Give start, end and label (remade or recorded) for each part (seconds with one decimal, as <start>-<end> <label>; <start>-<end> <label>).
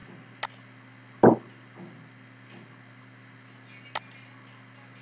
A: 0.0-5.0 recorded